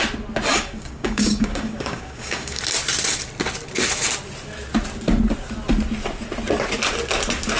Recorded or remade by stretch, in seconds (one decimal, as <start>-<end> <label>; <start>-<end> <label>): 0.0-0.5 recorded; 0.5-2.6 remade; 2.6-7.6 recorded